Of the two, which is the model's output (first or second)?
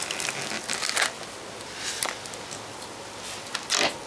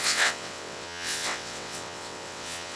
second